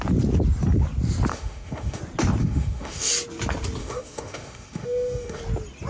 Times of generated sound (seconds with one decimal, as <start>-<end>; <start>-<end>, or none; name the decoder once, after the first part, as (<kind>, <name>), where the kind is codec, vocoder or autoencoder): 1.3-2.0 (autoencoder, DAC-VAE); 2.4-3.1; 3.8-5.4